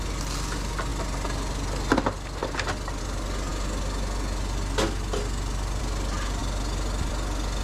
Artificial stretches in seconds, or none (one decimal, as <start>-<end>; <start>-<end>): none

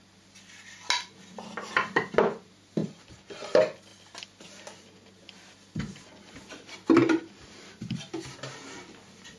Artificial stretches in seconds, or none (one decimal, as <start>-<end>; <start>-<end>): 2.8-3.5; 7.0-8.0